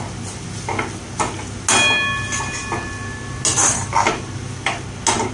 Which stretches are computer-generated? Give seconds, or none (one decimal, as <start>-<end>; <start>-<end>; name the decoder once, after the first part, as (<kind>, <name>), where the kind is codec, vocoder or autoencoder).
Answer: none